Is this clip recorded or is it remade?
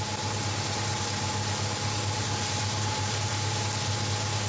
recorded